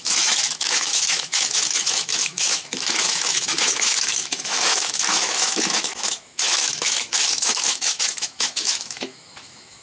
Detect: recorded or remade remade